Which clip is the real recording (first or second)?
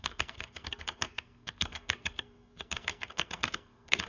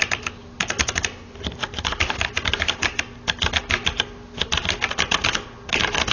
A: second